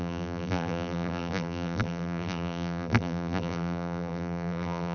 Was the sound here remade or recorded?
remade